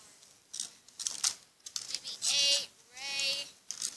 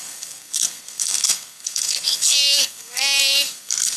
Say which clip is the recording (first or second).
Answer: first